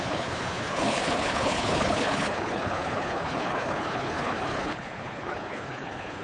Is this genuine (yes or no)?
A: no